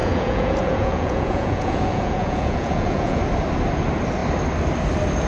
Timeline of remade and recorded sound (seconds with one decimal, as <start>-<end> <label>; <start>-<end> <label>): 0.0-3.2 remade; 3.2-5.3 recorded